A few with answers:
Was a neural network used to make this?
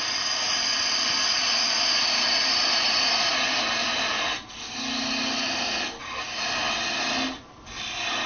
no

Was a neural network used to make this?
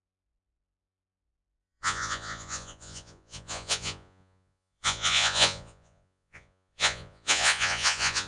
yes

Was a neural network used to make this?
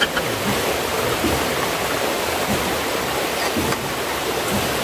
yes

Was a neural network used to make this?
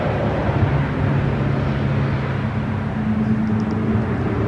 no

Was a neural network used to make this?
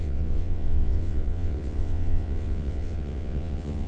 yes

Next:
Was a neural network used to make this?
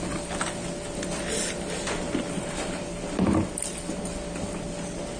no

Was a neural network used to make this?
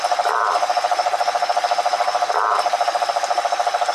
no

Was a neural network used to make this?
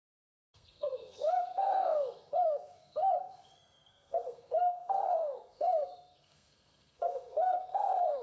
yes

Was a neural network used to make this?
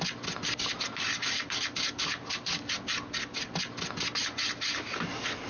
no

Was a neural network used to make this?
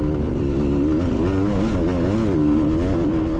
no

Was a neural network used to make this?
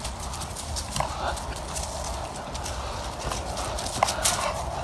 no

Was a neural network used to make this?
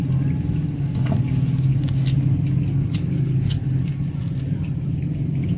no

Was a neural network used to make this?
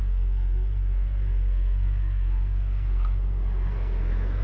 yes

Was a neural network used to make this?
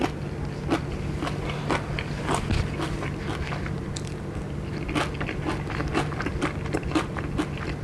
no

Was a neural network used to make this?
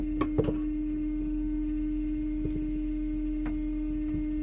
no